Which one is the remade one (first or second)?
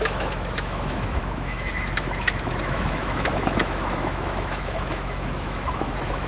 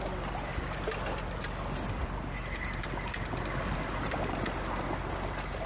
first